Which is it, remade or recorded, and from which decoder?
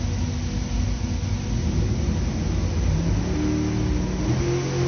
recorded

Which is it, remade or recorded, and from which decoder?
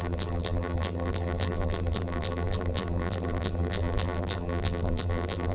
remade, vocoder, BigVGAN v2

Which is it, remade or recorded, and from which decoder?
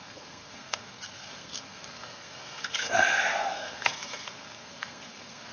remade, codec, SNAC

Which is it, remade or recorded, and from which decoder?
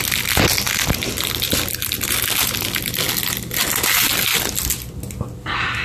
recorded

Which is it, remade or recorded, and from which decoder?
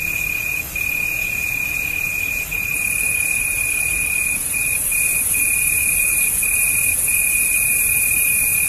remade, vocoder, Vocos